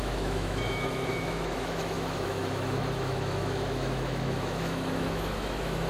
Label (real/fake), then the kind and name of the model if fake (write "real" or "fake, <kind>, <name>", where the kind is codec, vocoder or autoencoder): fake, autoencoder, DAC-VAE